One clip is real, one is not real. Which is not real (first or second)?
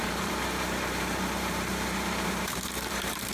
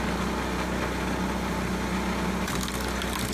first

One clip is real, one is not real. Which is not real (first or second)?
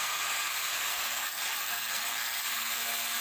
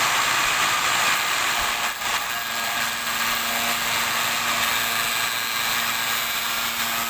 first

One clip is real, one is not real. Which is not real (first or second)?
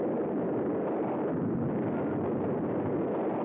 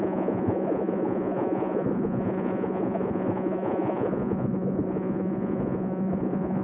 second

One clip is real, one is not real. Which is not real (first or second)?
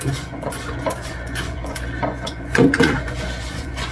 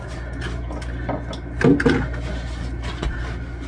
first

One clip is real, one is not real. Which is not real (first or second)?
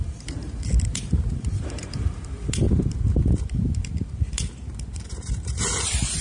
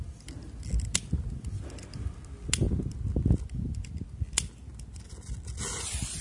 first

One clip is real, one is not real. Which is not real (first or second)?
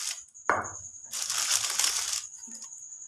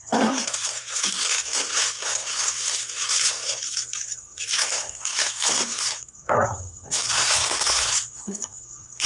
second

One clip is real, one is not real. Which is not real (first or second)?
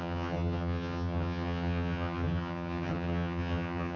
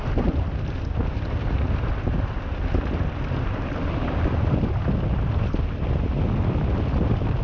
first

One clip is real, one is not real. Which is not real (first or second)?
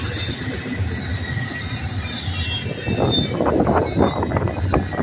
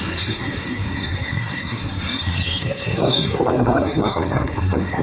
second